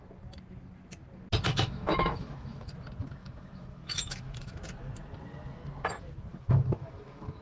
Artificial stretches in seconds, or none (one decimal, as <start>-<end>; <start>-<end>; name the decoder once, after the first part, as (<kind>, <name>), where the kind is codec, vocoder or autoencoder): 1.5-2.7 (autoencoder, DAC-VAE); 3.2-4.6; 6.3-7.4